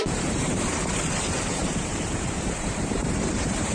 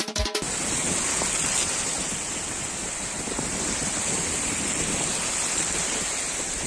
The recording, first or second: second